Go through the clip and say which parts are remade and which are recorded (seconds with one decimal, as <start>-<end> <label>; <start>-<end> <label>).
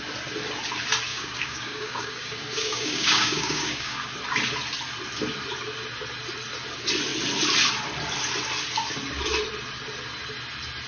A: 0.0-1.1 recorded; 1.1-4.1 remade; 4.1-10.9 recorded